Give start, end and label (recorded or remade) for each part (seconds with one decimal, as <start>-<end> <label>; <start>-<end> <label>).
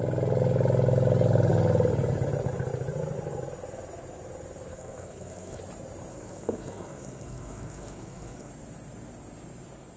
0.0-4.7 recorded; 4.7-5.6 remade; 5.6-6.1 recorded; 6.1-8.5 remade; 8.5-10.0 recorded